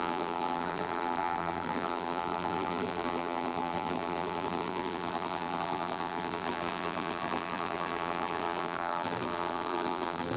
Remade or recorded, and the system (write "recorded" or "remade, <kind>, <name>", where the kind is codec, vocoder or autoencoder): remade, vocoder, BigVGAN v2